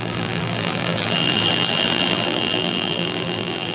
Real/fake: fake